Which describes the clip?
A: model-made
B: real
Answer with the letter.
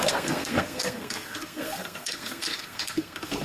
A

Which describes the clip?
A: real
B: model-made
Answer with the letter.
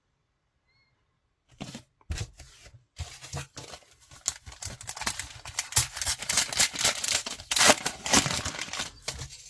A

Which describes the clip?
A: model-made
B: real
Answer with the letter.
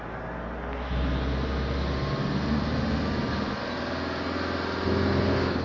B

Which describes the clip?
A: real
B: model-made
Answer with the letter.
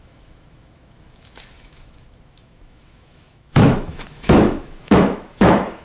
B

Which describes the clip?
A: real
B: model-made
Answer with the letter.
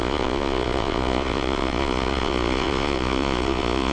B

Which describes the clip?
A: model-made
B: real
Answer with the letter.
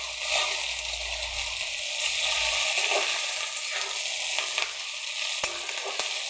B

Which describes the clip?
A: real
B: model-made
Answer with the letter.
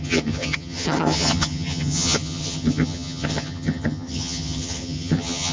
B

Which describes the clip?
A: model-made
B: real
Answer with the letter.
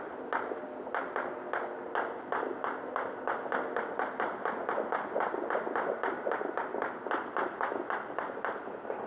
B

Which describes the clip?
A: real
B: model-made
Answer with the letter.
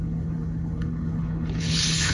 B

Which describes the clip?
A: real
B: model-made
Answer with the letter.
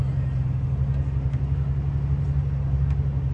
A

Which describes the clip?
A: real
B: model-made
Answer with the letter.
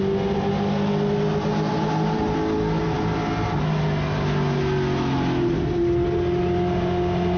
A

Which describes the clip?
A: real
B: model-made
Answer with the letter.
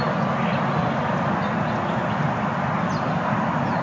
A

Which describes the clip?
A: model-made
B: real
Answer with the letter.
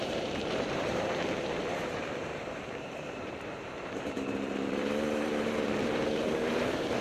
A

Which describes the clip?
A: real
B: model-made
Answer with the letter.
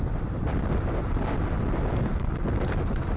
A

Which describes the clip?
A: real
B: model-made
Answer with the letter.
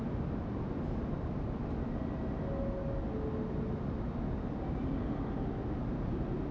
A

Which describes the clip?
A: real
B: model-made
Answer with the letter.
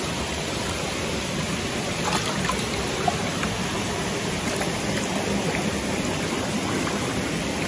B